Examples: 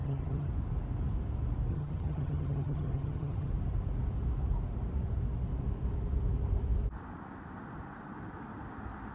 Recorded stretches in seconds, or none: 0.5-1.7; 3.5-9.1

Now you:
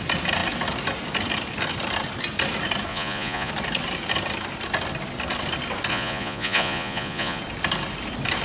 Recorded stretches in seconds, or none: 0.0-2.9; 3.5-5.9; 7.4-8.4

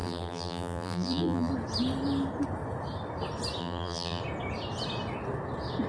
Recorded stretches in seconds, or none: 1.5-3.6; 4.2-5.9

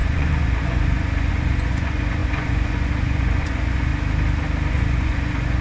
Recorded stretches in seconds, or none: 3.9-4.7

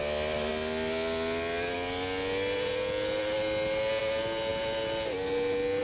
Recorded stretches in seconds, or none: 0.0-5.8

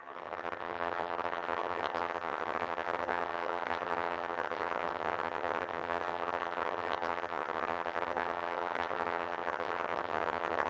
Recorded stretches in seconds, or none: none